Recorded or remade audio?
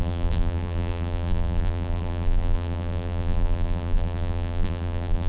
remade